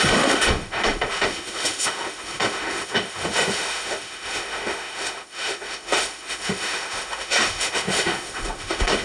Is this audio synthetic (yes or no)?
yes